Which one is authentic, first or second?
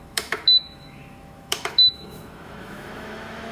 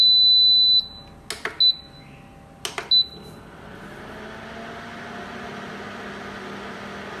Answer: second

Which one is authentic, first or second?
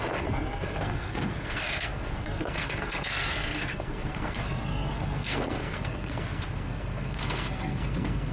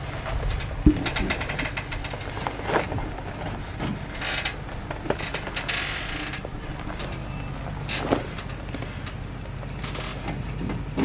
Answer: second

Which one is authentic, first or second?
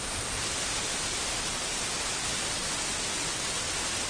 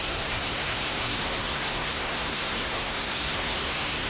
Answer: first